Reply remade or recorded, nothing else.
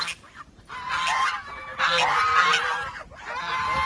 recorded